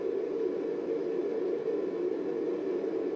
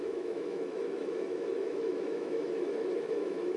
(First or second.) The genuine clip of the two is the first